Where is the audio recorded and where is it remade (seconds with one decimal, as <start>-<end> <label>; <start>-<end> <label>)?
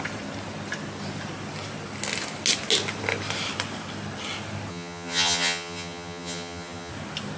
0.0-4.7 recorded; 4.7-6.9 remade; 6.9-7.4 recorded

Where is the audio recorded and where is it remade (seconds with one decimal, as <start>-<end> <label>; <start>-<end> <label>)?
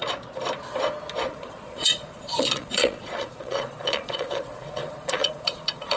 0.0-1.3 recorded; 1.3-6.0 remade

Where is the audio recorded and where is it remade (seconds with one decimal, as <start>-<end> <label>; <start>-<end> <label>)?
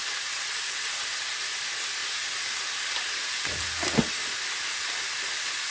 0.0-5.7 recorded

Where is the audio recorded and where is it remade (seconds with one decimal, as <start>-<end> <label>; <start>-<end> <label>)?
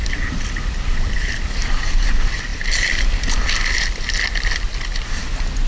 0.0-5.7 recorded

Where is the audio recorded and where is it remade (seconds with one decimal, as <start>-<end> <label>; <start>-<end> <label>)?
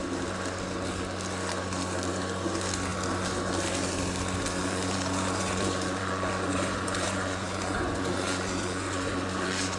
0.0-4.6 recorded; 4.6-9.8 remade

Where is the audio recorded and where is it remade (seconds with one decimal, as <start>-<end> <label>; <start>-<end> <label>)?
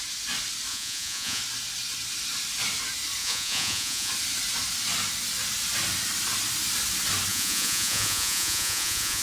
0.0-0.7 recorded; 0.7-1.4 remade; 1.4-3.2 recorded; 3.2-4.1 remade; 4.1-7.3 recorded; 7.3-9.2 remade